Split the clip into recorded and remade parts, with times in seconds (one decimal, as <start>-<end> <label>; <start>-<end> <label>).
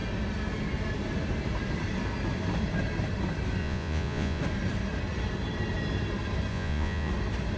0.0-3.6 recorded; 3.6-4.4 remade; 4.4-6.5 recorded; 6.5-7.1 remade; 7.1-7.6 recorded